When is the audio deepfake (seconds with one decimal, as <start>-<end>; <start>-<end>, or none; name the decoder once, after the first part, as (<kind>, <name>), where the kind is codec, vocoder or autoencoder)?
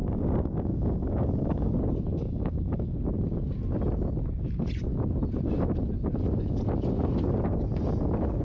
0.0-1.7 (codec, DAC); 2.1-3.0